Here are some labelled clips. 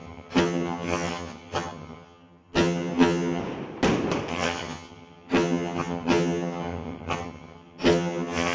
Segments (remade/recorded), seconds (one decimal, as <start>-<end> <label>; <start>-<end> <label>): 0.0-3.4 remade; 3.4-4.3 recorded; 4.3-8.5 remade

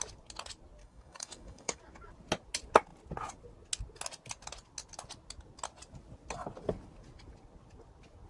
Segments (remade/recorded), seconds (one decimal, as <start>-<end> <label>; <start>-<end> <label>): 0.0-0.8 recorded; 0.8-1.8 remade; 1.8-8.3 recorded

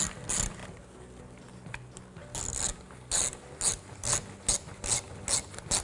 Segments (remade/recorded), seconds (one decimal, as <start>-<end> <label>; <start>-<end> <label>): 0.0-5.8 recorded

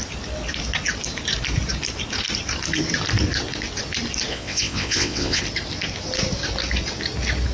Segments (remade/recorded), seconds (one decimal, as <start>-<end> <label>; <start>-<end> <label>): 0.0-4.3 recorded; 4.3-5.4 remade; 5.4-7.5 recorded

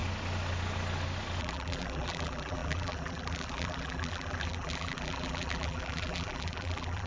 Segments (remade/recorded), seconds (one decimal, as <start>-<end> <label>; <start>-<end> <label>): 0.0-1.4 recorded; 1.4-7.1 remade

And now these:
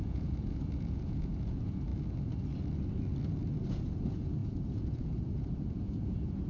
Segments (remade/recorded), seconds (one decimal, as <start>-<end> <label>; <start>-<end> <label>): 0.0-1.9 remade; 1.9-3.7 recorded; 3.7-6.5 remade